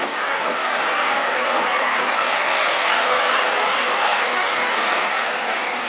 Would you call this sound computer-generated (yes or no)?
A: yes